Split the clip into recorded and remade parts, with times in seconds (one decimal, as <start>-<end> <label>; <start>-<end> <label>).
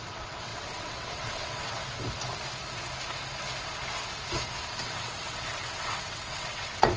0.0-1.8 remade; 1.8-4.8 recorded; 4.8-7.0 remade